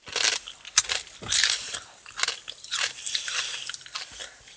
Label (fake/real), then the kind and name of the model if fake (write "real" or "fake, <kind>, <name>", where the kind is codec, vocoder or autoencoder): real